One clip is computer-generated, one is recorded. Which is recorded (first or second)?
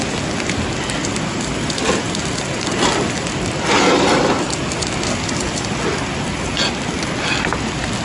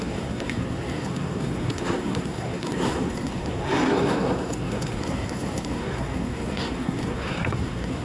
first